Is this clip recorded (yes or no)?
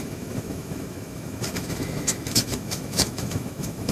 no